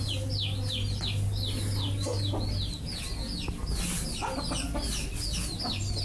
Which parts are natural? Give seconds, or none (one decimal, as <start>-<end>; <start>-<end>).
0.0-6.0